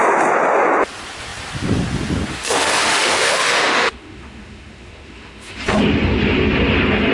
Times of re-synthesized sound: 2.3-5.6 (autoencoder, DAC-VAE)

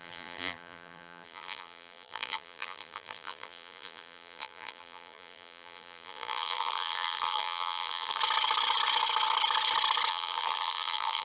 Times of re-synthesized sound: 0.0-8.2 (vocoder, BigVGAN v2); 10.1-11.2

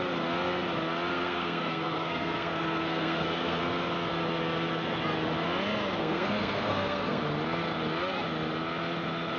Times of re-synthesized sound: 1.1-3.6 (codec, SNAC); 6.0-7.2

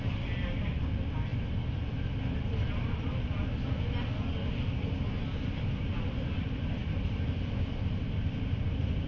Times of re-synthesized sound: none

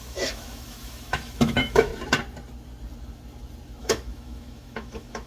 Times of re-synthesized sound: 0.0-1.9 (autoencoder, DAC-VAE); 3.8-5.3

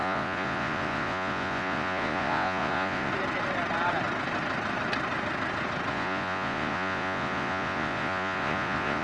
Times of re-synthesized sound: 0.0-3.1 (vocoder, Vocos); 5.9-9.0

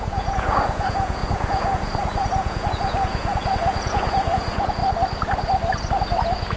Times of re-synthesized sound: 0.0-4.8 (vocoder, Vocos); 5.9-6.6

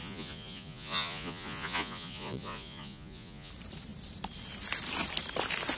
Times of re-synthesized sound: 0.0-3.5 (vocoder, Vocos)